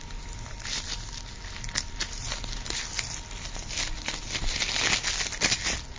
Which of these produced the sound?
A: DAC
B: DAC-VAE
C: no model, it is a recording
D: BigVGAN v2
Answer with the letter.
C